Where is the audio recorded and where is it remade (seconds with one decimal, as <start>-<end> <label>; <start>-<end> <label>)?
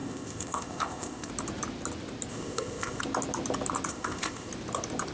0.0-1.3 remade; 1.3-2.3 recorded; 2.3-3.0 remade; 3.0-3.9 recorded; 3.9-4.5 remade; 4.5-5.1 recorded